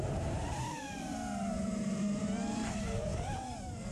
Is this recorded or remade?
remade